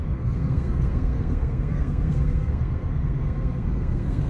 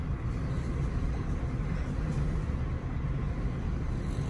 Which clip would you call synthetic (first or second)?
first